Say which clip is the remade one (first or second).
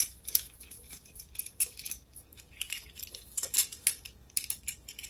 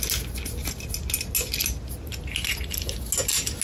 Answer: first